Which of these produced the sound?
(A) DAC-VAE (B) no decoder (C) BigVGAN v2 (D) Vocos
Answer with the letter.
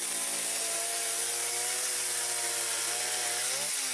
B